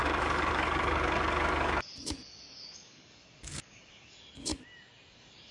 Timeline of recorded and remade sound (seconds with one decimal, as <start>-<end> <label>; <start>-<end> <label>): 0.0-4.5 remade; 4.5-5.1 recorded; 5.1-5.5 remade